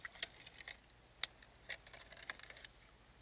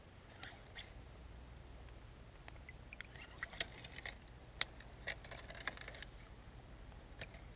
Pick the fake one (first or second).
second